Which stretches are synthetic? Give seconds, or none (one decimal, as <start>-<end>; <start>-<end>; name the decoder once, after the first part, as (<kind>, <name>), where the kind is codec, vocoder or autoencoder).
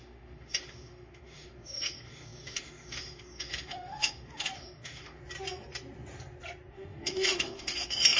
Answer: 0.0-5.2 (autoencoder, DAC-VAE); 6.7-8.2